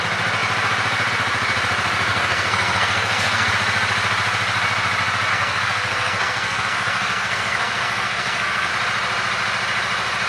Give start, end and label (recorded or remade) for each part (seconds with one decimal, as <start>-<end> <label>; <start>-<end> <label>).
0.0-2.1 recorded; 2.1-3.5 remade; 3.5-5.3 recorded; 5.3-8.7 remade; 8.7-10.3 recorded